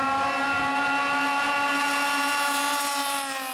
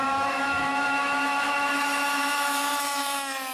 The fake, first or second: second